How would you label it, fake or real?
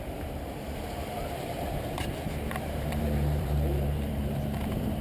fake